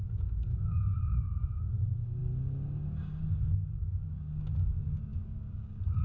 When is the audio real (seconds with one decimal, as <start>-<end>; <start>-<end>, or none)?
2.2-3.8